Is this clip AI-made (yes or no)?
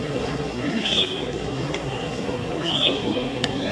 yes